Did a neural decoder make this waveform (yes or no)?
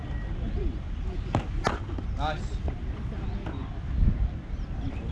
no